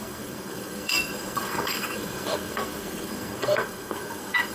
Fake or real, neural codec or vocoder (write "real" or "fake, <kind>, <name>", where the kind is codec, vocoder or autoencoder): fake, codec, SNAC